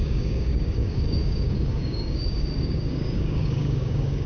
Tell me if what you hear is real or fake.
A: fake